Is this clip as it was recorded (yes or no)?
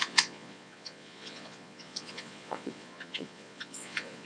no